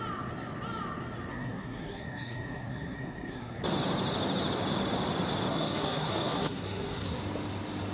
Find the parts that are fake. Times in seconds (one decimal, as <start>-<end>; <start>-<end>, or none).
1.3-3.6; 5.5-7.2